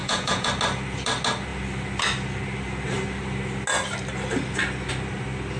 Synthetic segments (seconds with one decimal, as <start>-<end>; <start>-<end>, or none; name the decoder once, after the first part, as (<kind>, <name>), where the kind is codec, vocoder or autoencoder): 0.0-0.5 (vocoder, Vocos)